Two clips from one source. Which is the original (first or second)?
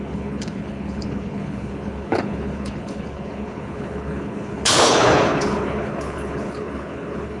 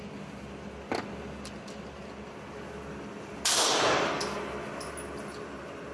second